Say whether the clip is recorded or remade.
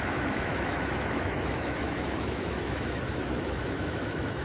remade